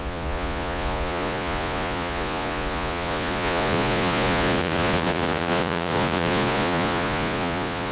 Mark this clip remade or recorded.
remade